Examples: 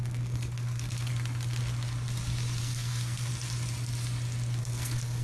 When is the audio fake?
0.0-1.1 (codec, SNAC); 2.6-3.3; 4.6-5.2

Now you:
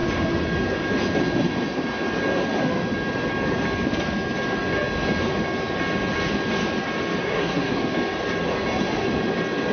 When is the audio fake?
7.2-7.8 (codec, SNAC)